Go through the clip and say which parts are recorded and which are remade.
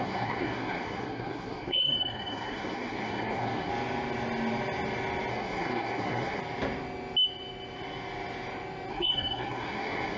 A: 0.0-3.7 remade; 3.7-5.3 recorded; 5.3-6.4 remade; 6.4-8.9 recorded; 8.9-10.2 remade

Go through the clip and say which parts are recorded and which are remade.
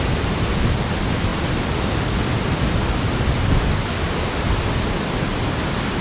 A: 0.0-6.0 recorded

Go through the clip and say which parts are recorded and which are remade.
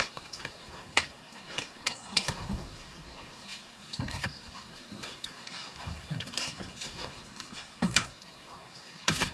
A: 0.0-9.3 remade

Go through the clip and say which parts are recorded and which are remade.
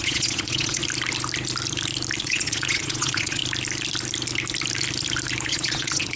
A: 0.0-0.8 remade; 0.8-2.2 recorded; 2.2-3.4 remade; 3.4-5.5 recorded; 5.5-6.2 remade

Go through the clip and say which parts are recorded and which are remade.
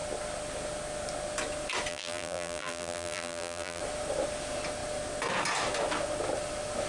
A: 0.0-1.9 recorded; 1.9-3.8 remade; 3.8-6.9 recorded